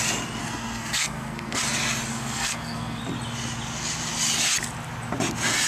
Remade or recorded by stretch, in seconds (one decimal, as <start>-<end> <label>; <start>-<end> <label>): 0.0-0.4 recorded; 0.4-1.6 remade; 1.6-2.1 recorded; 2.1-3.0 remade; 3.0-5.7 recorded